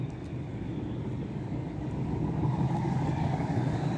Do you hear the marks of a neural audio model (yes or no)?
yes